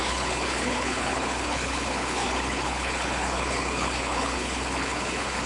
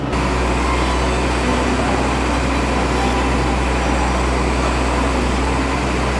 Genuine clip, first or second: second